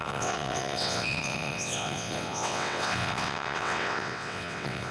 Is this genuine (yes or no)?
no